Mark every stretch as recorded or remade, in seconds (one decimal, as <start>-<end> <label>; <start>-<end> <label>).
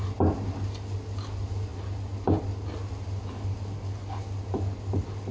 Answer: 0.0-5.3 recorded